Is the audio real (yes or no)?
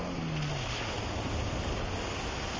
yes